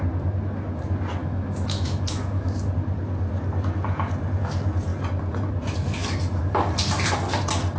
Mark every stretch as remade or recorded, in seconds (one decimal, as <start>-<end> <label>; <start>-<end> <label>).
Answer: 0.0-1.2 recorded; 1.2-2.7 remade; 2.7-7.8 recorded